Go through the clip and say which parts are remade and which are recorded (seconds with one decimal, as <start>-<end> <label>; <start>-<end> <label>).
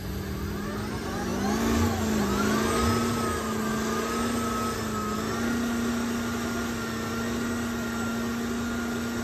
0.0-9.2 recorded